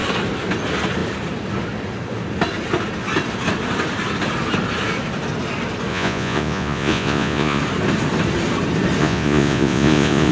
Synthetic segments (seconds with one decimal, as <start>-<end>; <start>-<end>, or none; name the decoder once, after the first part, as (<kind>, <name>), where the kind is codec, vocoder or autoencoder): 5.9-7.6 (vocoder, Vocos); 9.0-10.3